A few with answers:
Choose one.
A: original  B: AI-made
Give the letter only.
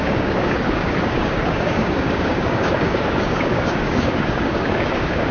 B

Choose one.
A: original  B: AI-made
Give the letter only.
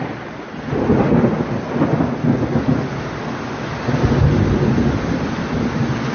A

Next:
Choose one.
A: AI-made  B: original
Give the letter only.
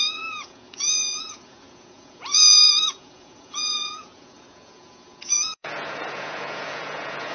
A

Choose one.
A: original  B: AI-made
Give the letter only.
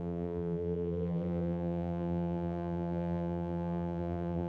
B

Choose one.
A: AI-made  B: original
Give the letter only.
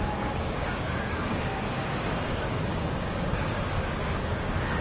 A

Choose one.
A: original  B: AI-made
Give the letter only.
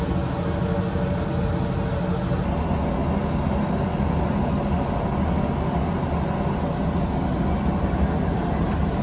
A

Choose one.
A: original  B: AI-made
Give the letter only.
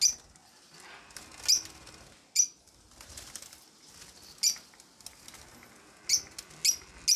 A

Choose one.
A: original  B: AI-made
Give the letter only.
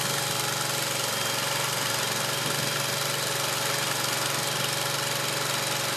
A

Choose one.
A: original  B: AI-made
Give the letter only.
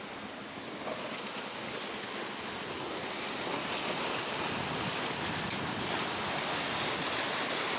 A